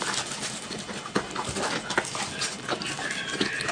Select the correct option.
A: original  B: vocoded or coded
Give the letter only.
A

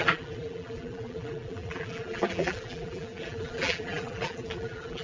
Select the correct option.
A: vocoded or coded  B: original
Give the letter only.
A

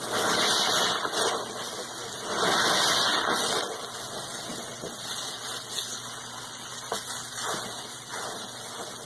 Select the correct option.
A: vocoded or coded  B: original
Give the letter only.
B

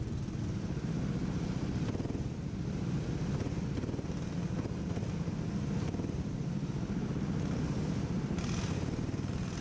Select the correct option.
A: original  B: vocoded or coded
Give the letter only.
A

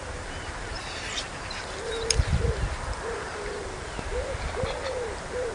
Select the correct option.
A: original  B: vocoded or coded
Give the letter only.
B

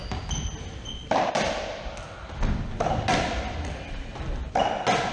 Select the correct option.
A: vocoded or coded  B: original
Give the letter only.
B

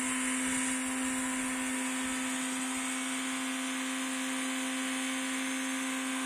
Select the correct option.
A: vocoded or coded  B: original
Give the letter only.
B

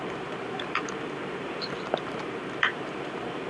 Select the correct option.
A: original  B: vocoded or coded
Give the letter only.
B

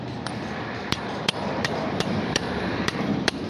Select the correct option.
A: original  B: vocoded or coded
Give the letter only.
B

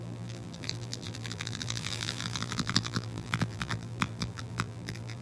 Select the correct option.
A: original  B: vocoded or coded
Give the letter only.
B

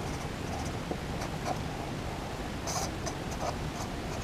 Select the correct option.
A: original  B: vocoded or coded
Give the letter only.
B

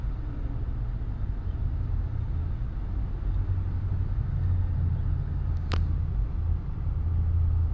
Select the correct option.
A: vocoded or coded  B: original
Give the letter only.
B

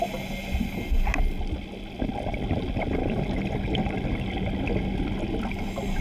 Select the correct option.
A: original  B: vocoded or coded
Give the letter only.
A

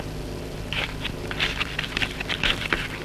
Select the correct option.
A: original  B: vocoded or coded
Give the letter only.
B